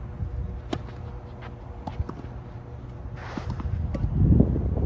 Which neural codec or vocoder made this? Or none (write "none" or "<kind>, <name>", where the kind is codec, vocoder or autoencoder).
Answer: none